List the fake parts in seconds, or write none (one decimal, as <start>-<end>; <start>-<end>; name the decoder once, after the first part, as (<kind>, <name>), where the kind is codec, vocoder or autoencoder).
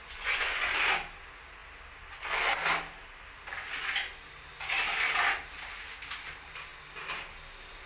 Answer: 0.0-0.7 (vocoder, Vocos)